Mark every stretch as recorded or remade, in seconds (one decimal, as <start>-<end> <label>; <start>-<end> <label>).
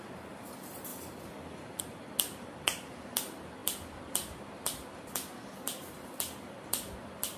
0.0-7.4 recorded